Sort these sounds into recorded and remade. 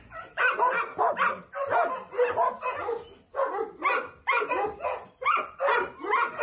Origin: recorded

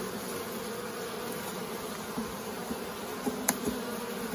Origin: recorded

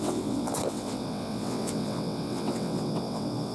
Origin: remade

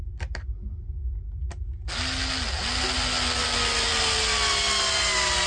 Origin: recorded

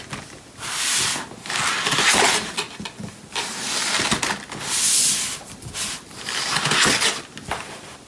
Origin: recorded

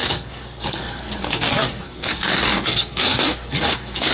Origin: remade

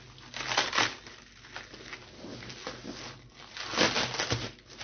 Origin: recorded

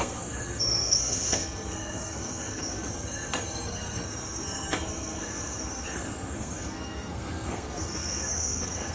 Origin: remade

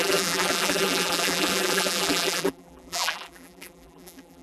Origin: remade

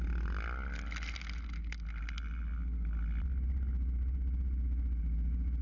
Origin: recorded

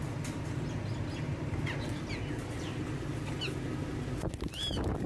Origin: recorded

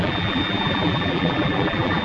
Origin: remade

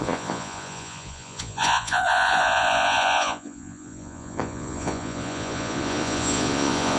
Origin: remade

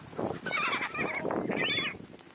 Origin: recorded